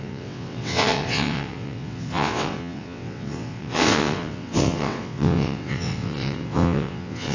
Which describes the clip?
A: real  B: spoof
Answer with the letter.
B